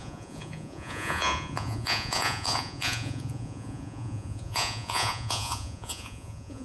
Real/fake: fake